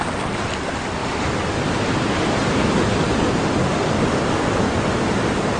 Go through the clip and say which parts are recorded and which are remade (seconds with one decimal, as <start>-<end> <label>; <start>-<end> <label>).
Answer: 0.0-3.6 recorded; 3.6-4.4 remade; 4.4-5.6 recorded